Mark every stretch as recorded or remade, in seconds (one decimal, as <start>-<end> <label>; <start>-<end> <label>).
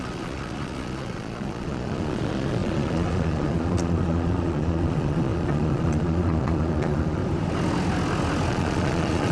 0.0-7.2 remade; 7.2-8.5 recorded; 8.5-9.3 remade